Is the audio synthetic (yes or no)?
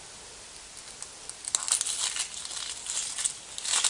no